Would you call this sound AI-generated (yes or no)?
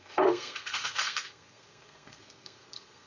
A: yes